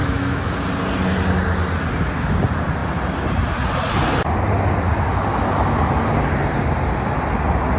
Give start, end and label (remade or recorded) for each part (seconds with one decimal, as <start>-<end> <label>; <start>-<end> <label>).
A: 0.0-0.6 remade; 0.6-7.8 recorded